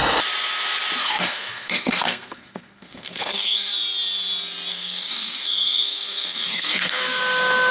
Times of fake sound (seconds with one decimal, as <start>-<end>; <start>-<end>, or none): 1.0-3.7; 4.7-7.2